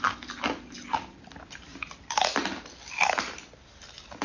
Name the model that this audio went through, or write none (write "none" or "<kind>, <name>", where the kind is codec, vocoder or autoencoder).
none